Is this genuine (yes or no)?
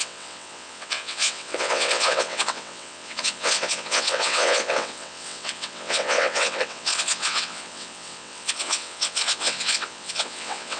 no